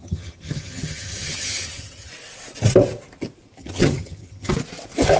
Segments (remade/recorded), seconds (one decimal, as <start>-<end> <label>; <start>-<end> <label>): 0.0-2.1 remade; 2.1-3.6 recorded; 3.6-4.5 remade; 4.5-5.2 recorded